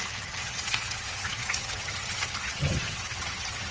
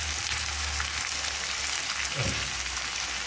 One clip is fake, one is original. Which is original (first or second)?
second